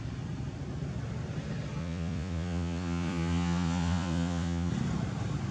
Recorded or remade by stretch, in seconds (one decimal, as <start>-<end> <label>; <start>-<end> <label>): 0.0-1.8 recorded; 1.8-4.7 remade; 4.7-5.5 recorded